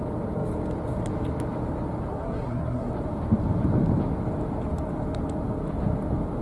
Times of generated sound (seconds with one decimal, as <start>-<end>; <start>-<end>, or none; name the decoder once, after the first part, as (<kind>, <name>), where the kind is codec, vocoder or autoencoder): 2.1-2.9 (codec, SNAC)